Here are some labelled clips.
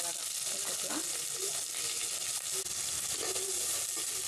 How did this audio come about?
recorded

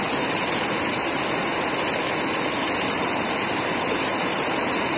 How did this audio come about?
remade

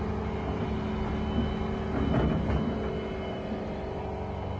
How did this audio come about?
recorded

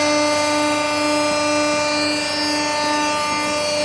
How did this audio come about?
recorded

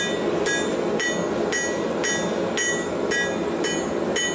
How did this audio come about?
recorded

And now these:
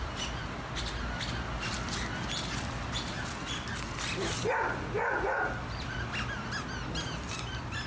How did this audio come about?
recorded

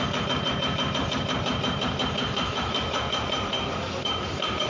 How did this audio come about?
remade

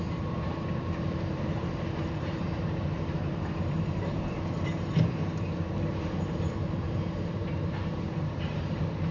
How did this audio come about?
remade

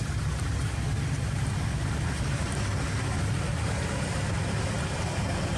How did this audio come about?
recorded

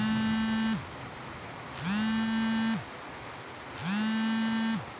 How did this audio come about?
recorded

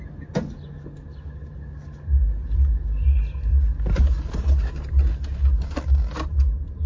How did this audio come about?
recorded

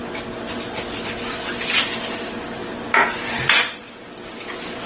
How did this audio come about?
recorded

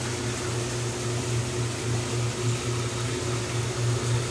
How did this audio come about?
remade